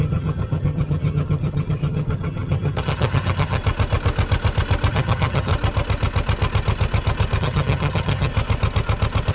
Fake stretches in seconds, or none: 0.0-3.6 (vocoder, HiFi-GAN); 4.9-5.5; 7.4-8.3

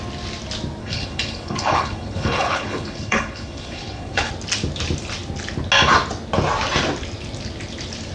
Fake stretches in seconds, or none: 0.8-4.3 (codec, HILCodec)

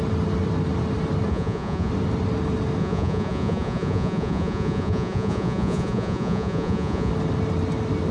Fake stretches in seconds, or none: 1.3-1.9 (vocoder, Vocos); 2.8-7.1

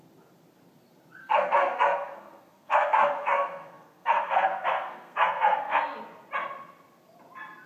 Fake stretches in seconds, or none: 1.2-5.8 (codec, SNAC)